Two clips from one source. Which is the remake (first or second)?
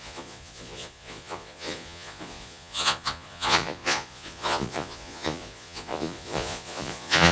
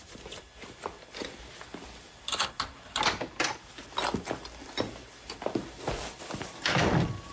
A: first